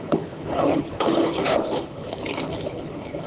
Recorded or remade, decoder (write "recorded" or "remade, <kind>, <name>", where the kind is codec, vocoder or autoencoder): remade, codec, HILCodec